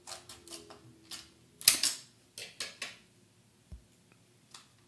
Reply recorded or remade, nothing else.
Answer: recorded